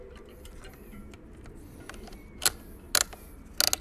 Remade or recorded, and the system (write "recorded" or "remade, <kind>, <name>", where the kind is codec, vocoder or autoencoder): recorded